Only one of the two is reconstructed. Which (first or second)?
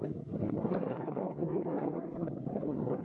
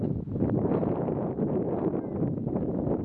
first